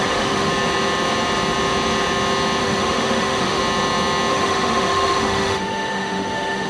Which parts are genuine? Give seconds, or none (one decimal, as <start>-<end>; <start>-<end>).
0.5-2.6; 3.6-4.3